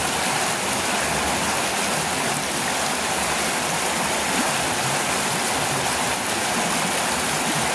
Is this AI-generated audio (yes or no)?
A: no